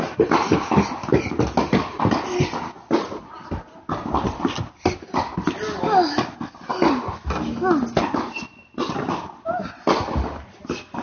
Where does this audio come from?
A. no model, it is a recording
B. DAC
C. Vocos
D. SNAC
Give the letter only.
A